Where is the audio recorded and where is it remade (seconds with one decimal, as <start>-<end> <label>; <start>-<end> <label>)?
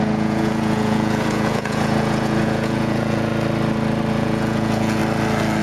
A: 0.0-3.3 remade; 3.3-4.1 recorded; 4.1-5.0 remade; 5.0-5.6 recorded